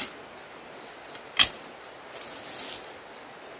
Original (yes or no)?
yes